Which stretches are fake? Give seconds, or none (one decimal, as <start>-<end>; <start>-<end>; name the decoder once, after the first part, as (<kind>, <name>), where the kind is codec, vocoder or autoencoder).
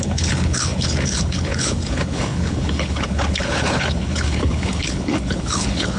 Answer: 0.0-6.0 (codec, HILCodec)